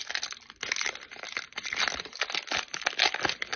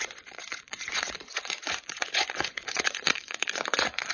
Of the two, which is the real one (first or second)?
first